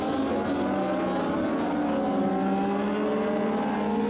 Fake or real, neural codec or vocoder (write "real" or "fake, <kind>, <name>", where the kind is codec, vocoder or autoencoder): real